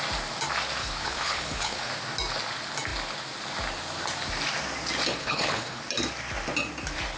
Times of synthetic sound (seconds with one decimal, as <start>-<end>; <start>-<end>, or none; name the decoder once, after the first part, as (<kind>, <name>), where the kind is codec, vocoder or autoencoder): 0.8-1.9 (codec, HILCodec); 5.2-5.8